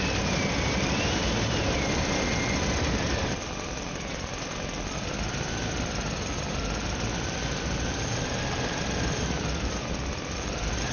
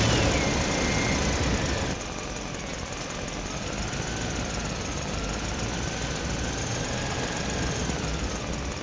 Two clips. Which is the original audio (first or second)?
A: second